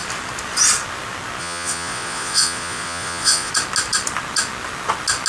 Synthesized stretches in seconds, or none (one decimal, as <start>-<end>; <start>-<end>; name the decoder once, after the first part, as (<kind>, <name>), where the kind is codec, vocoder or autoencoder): 1.4-3.5 (vocoder, Vocos)